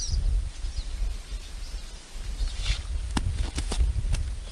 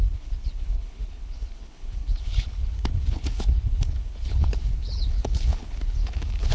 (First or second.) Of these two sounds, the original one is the first